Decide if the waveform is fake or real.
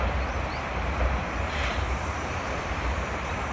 fake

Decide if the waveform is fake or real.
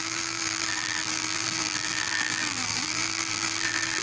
fake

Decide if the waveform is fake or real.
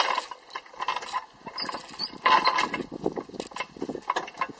real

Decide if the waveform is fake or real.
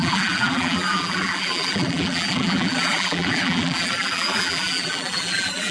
fake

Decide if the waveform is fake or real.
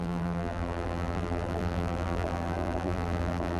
fake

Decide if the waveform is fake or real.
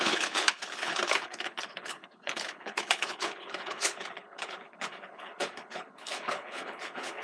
fake